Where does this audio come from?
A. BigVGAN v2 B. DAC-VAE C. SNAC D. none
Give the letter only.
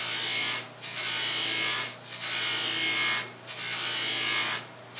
D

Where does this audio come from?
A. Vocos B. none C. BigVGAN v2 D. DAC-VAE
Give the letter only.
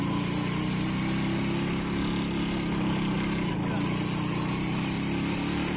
B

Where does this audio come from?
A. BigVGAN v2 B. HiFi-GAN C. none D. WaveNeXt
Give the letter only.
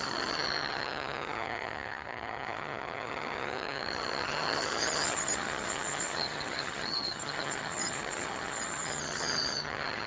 B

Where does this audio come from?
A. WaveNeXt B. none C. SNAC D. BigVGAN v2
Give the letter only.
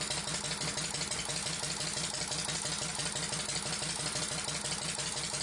B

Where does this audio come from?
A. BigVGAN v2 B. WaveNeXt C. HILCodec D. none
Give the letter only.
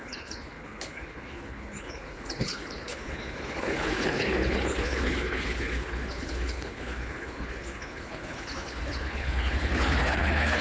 C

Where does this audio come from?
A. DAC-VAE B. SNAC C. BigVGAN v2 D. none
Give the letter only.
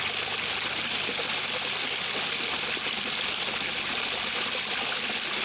D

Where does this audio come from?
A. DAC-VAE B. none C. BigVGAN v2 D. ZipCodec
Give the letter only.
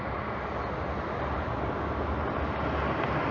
B